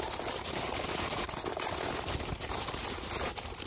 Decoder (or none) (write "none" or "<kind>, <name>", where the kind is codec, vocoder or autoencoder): none